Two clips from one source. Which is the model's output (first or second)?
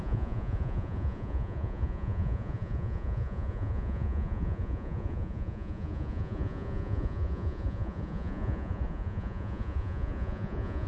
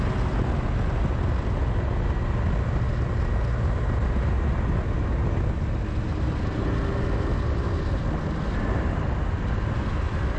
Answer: first